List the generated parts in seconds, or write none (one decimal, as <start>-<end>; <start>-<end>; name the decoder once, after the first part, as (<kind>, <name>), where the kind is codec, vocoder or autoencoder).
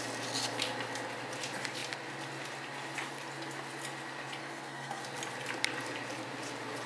4.4-5.0 (codec, SNAC)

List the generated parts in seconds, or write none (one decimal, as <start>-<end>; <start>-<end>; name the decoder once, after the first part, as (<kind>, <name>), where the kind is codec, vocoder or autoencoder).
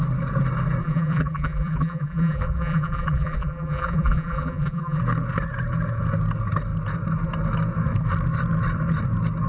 0.8-5.0 (vocoder, BigVGAN v2)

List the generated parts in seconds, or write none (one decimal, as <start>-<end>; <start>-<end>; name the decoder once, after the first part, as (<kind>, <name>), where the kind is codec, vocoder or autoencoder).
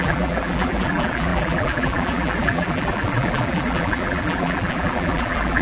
0.0-5.6 (vocoder, BigVGAN v2)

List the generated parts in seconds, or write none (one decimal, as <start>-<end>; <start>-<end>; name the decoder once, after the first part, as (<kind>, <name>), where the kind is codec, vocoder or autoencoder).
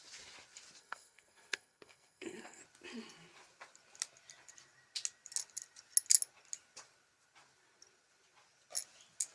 0.8-2.6 (codec, SNAC)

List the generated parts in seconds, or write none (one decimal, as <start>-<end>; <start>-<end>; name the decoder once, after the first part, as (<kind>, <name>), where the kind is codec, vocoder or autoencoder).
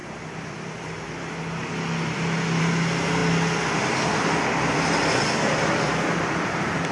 none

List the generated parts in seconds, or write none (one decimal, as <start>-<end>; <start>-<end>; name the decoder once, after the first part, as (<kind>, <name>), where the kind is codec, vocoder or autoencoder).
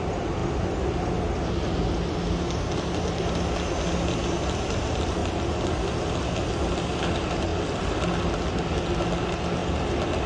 none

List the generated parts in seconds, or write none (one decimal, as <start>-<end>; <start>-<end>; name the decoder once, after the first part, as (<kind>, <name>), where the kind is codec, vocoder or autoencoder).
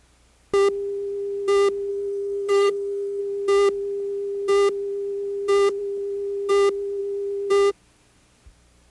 1.9-3.2 (codec, SNAC)